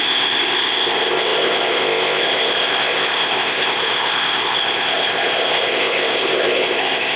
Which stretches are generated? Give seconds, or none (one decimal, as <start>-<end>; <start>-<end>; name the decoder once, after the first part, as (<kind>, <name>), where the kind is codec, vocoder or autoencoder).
0.0-7.2 (codec, ZipCodec)